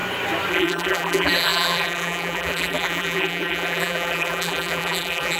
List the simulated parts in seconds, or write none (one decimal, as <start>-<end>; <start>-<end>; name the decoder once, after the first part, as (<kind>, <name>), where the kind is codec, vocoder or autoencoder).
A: 0.5-5.4 (vocoder, BigVGAN v2)